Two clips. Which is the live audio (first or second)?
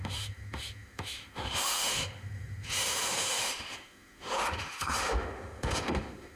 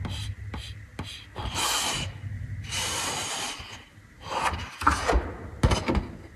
second